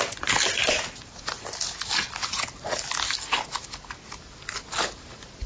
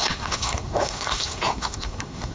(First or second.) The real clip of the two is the first